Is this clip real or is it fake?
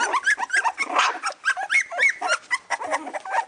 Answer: real